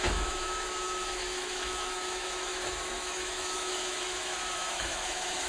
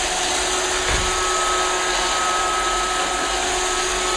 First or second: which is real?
second